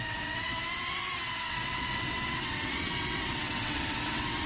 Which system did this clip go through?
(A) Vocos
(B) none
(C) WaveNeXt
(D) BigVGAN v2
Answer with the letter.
C